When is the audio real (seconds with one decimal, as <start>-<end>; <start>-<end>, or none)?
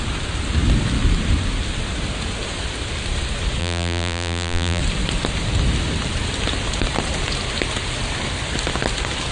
0.0-3.6; 4.8-9.3